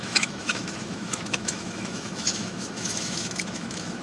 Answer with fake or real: fake